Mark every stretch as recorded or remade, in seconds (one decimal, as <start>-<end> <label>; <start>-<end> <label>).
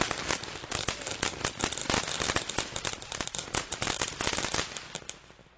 0.0-5.6 recorded